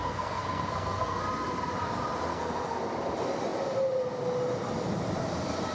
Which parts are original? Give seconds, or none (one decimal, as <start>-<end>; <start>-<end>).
1.2-2.3; 2.8-5.7